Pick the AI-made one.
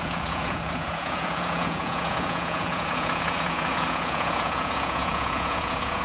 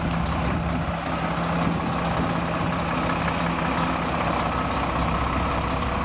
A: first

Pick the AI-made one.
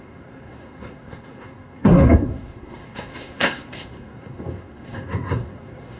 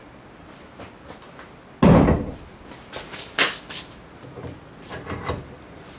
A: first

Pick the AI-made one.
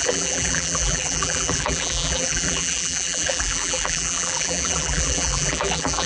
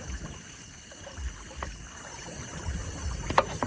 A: first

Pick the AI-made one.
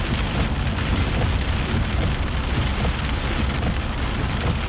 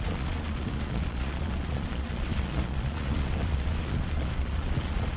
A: second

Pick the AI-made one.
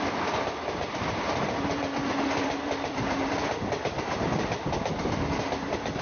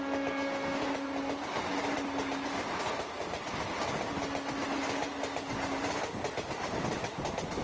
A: first